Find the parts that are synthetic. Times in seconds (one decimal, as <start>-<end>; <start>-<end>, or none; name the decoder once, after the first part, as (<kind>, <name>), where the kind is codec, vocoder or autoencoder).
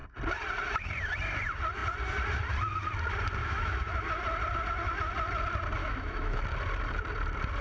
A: 3.4-3.9 (autoencoder, DAC-VAE); 5.8-6.4